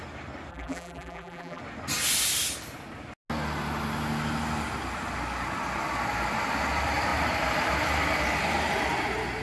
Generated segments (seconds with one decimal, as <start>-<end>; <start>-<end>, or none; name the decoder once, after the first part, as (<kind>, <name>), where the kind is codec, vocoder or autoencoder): 0.5-1.6 (vocoder, BigVGAN v2)